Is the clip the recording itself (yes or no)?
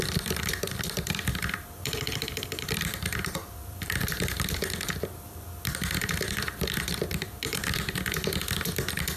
no